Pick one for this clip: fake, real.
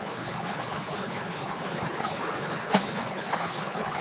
fake